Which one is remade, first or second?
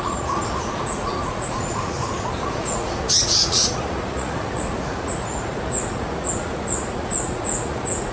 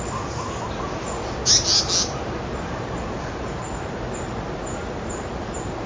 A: first